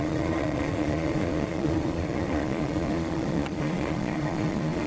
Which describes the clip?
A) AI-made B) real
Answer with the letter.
A